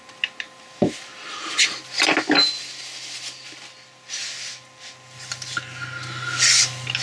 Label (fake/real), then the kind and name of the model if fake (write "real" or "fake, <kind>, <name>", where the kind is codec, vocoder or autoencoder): real